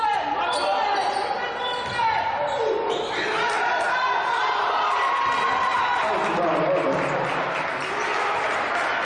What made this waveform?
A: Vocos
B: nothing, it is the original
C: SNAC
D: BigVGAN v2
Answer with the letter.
B